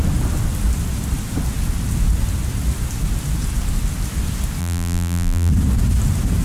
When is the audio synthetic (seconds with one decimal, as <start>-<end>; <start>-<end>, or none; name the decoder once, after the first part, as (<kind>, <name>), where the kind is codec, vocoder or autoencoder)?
4.6-5.5 (vocoder, BigVGAN v2)